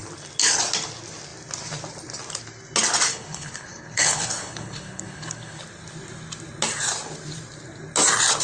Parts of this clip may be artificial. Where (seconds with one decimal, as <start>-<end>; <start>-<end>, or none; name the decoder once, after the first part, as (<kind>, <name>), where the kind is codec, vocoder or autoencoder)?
3.1-5.6 (codec, HILCodec)